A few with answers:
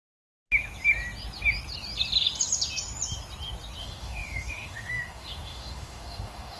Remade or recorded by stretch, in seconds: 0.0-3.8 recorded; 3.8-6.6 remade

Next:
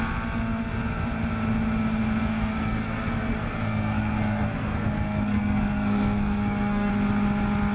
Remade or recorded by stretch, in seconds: 0.0-2.3 recorded; 2.3-6.9 remade; 6.9-7.7 recorded

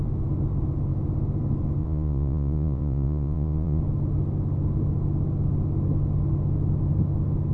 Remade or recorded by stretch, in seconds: 0.0-1.8 recorded; 1.8-3.8 remade; 3.8-7.5 recorded

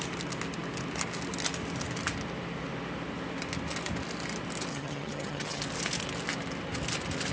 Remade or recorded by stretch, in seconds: 0.0-4.7 recorded; 4.7-5.6 remade; 5.6-7.3 recorded